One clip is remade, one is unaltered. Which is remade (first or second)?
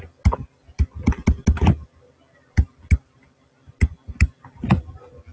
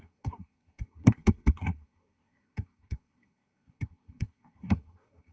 second